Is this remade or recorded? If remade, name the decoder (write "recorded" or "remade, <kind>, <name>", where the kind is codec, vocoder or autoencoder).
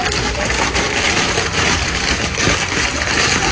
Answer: remade, vocoder, BigVGAN v2